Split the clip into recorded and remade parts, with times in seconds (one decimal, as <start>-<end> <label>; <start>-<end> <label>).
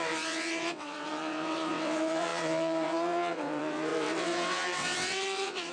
0.0-5.7 remade